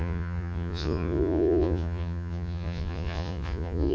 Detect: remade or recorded remade